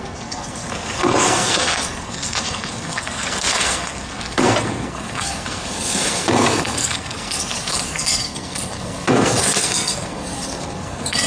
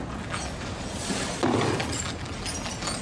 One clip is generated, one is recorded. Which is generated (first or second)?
first